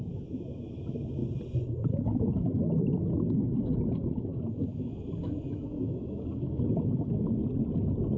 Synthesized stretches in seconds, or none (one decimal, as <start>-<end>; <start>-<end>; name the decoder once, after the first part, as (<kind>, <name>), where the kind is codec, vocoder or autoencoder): 0.0-1.2 (autoencoder, DAC-VAE); 1.9-7.4